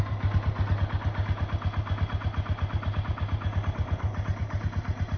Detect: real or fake real